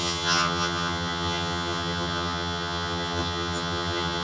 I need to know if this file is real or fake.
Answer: fake